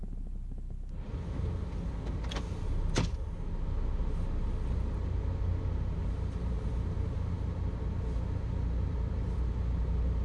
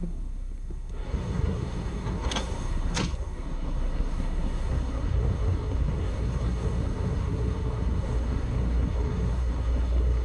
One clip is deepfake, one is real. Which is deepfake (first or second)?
second